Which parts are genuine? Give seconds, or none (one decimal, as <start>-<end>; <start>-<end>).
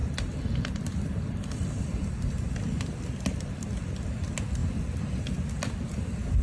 2.5-6.4